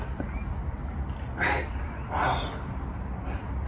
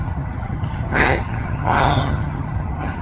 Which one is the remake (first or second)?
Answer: second